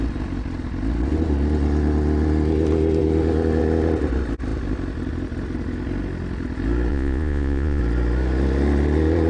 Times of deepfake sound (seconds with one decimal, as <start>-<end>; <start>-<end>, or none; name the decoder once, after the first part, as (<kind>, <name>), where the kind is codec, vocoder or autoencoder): 6.9-7.8 (vocoder, Vocos)

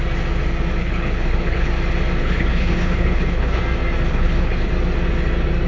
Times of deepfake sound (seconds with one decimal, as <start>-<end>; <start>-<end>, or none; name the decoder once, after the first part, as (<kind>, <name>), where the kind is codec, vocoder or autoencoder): 0.8-1.7 (codec, HILCodec); 2.2-3.6; 4.1-4.7

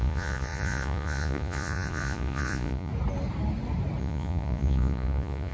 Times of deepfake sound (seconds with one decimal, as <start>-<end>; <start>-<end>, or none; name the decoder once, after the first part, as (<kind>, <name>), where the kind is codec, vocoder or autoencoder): 0.0-2.9 (vocoder, Vocos); 4.0-5.5

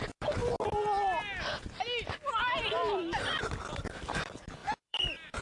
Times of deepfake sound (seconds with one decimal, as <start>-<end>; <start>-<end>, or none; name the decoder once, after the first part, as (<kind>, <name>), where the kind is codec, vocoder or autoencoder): 0.0-0.4 (vocoder, BigVGAN v2); 2.4-5.4

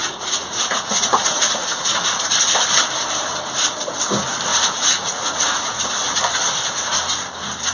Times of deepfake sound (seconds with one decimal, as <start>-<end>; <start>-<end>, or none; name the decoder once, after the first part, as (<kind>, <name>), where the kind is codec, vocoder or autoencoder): 0.0-2.3 (vocoder, Vocos); 4.5-5.9

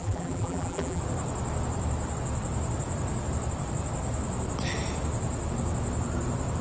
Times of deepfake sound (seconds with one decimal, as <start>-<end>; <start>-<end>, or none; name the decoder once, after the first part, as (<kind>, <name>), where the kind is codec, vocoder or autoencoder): 0.0-1.0 (vocoder, BigVGAN v2)

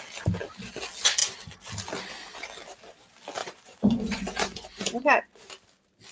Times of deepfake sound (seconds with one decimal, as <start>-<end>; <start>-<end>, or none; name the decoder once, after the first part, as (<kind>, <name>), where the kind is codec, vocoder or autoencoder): 3.4-5.5 (vocoder, Vocos)

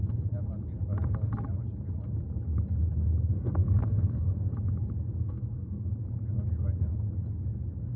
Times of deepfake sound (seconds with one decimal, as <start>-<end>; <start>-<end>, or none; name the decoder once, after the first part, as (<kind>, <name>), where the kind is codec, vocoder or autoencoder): 3.3-4.3 (codec, SNAC); 5.2-5.9